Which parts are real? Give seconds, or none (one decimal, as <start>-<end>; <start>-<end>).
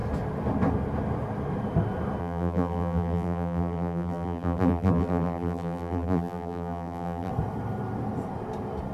0.0-2.2; 7.3-8.9